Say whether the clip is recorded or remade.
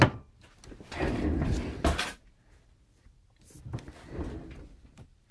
recorded